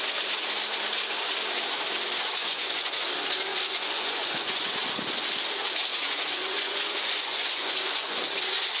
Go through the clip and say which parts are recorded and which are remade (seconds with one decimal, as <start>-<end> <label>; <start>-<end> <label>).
0.0-2.4 recorded; 2.4-2.9 remade; 2.9-3.5 recorded; 3.5-4.7 remade; 4.7-5.9 recorded; 5.9-8.2 remade; 8.2-8.8 recorded